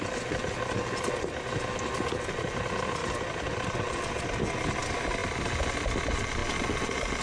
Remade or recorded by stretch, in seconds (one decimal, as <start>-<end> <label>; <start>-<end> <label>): 0.0-7.2 recorded